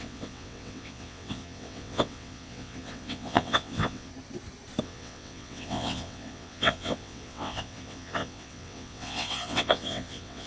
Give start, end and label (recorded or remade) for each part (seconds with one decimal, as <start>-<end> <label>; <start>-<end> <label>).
0.0-4.1 remade; 4.1-4.8 recorded; 4.8-10.5 remade